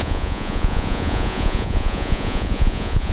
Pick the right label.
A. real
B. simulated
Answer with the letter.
B